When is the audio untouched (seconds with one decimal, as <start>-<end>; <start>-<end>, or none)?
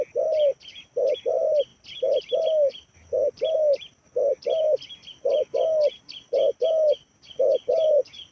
0.0-8.3